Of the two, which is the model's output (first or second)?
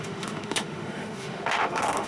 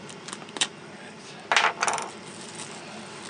first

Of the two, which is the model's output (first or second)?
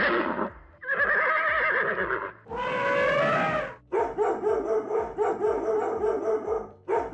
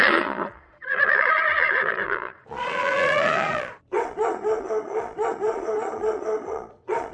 second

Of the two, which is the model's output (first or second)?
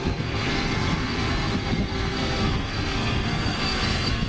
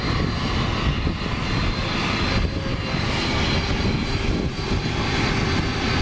first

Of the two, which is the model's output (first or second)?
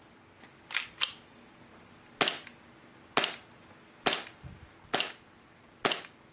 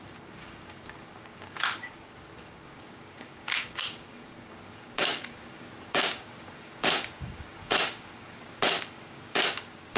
second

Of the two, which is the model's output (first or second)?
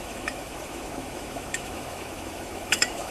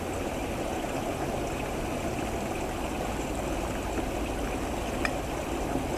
first